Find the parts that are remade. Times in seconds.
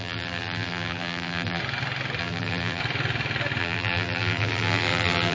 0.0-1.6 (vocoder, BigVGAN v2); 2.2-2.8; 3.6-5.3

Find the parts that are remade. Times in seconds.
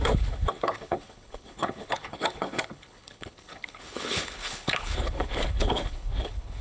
0.0-6.6 (codec, HILCodec)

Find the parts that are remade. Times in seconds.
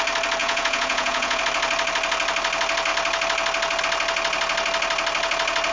0.4-1.4 (vocoder, Vocos)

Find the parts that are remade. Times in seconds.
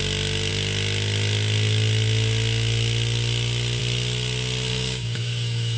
4.7-5.8 (codec, DAC)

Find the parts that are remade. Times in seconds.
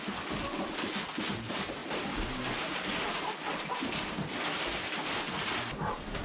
none